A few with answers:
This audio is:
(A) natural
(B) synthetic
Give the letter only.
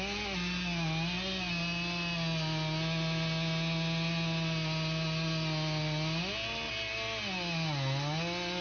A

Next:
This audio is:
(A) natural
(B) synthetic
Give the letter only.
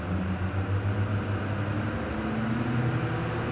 A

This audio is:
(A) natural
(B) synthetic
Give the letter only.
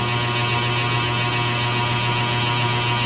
A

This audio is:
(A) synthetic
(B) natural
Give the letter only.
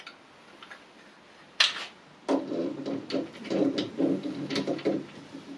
B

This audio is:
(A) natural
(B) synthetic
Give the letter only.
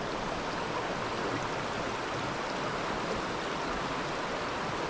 A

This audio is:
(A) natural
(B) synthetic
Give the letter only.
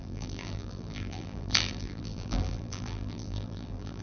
B